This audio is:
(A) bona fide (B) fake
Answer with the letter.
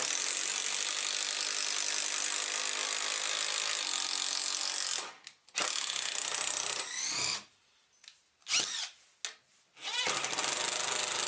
A